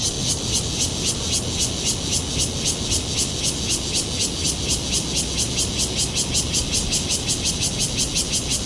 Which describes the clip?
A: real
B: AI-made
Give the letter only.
A